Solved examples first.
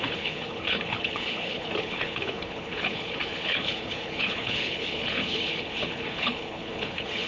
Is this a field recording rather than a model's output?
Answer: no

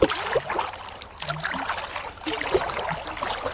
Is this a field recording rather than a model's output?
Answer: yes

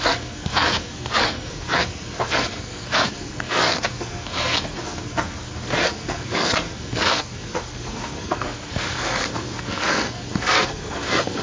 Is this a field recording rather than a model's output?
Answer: no